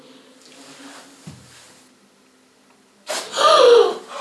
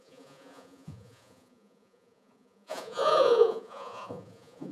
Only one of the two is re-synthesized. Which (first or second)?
second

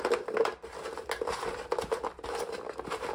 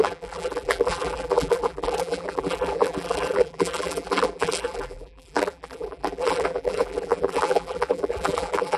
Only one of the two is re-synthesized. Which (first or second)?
second